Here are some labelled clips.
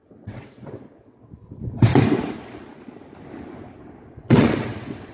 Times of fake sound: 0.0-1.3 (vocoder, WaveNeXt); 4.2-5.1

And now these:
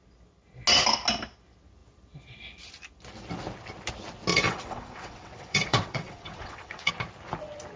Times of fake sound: 4.3-6.9 (vocoder, WaveNeXt)

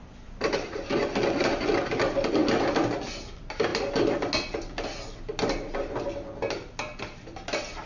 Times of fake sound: none

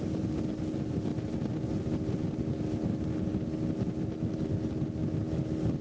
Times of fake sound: none

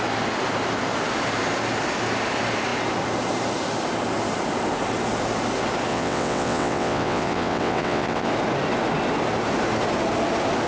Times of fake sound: 5.9-8.3 (vocoder, WaveNeXt)

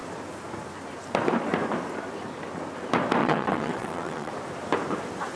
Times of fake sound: 3.2-4.3 (vocoder, WaveNeXt)

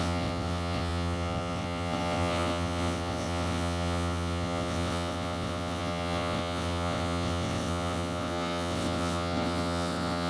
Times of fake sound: 0.0-10.3 (vocoder, WaveNeXt)